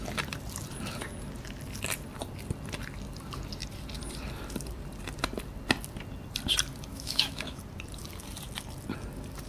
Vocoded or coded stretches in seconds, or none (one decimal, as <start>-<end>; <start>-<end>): 6.9-7.6